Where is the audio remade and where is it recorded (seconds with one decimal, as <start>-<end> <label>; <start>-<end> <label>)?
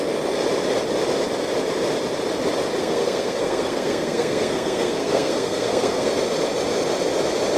0.0-2.8 recorded; 2.8-6.1 remade; 6.1-7.6 recorded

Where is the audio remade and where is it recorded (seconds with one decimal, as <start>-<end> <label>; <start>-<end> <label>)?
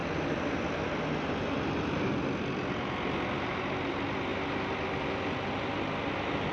0.0-6.5 recorded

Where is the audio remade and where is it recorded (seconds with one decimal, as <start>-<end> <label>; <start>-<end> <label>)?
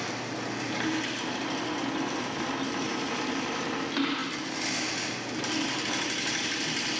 0.0-7.0 recorded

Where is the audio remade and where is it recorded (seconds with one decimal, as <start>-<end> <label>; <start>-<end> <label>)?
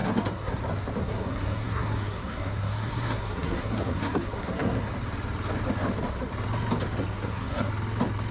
0.0-0.6 remade; 0.6-1.0 recorded; 1.0-4.9 remade; 4.9-7.0 recorded; 7.0-7.7 remade; 7.7-8.3 recorded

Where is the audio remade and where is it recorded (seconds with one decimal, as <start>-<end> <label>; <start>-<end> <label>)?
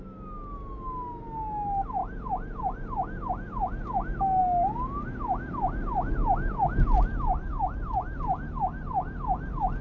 0.0-9.8 recorded